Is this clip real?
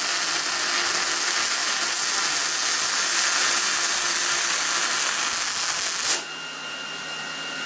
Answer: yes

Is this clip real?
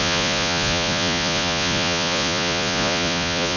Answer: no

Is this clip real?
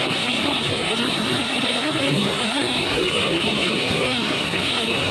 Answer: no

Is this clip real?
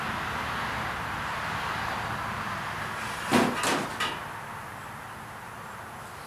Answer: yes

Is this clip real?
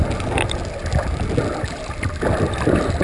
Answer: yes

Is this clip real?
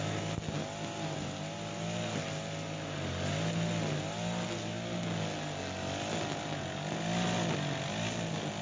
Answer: yes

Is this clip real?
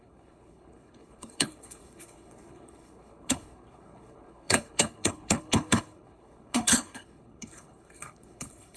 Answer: no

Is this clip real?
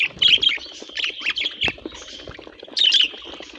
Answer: yes